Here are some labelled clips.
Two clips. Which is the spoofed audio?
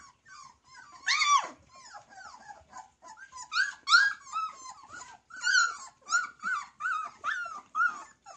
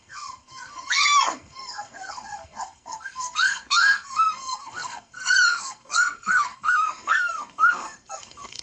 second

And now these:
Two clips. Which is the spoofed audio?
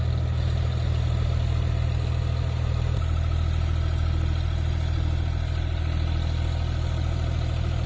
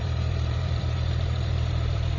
second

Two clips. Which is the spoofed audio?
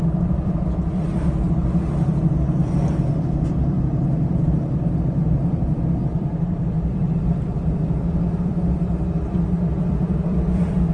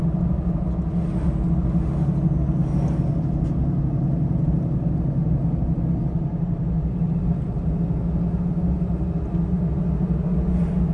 first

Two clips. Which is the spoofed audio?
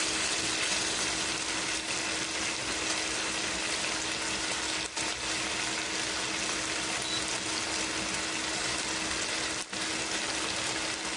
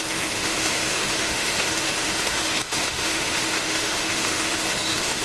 second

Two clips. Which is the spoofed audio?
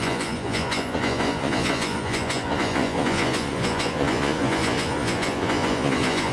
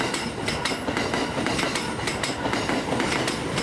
first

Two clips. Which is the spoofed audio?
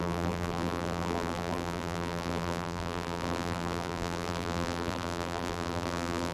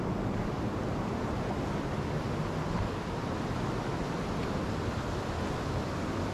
first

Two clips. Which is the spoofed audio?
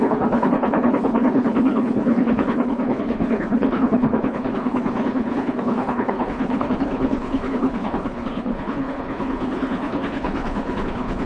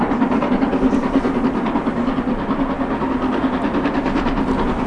first